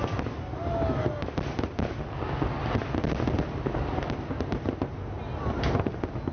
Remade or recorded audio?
recorded